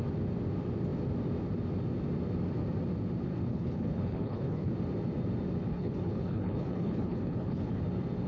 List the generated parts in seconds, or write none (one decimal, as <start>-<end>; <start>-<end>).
3.5-4.7; 5.7-7.8